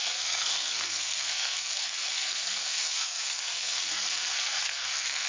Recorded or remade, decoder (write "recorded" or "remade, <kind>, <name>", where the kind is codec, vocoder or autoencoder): remade, codec, SNAC